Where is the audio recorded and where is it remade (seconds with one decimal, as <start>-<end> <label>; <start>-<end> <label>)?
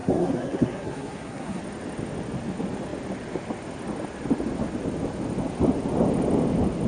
0.0-1.6 remade; 1.6-6.9 recorded